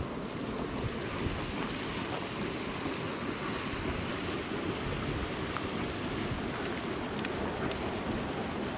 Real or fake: real